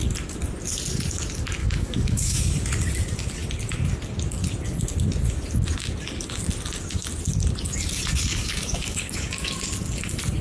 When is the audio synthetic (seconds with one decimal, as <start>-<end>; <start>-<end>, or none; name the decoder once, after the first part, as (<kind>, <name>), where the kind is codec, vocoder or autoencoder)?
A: 1.6-2.4 (codec, DAC); 8.3-9.5